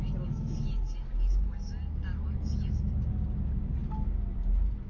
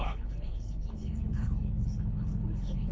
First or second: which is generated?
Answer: second